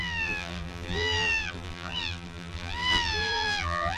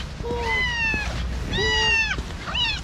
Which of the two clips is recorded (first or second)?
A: second